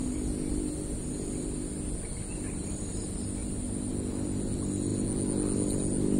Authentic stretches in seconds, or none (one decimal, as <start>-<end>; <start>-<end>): 0.0-6.2